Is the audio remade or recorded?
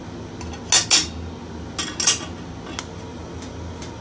recorded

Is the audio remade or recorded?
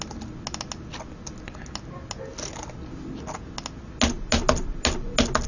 recorded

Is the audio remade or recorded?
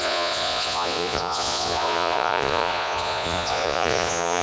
remade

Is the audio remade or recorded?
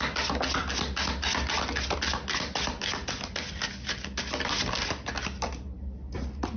recorded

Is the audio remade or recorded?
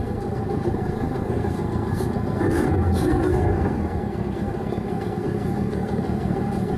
remade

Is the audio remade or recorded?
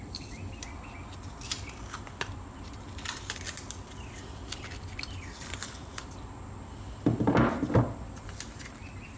recorded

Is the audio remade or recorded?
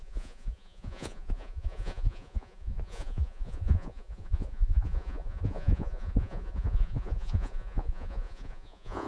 remade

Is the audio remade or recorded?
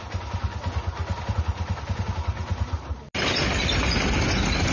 recorded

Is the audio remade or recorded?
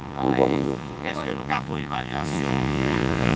remade